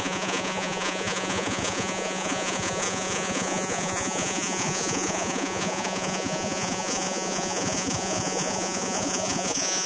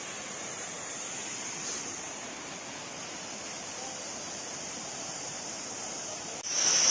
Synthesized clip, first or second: first